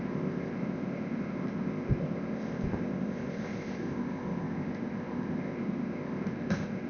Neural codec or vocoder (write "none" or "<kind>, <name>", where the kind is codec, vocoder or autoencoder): codec, ZipCodec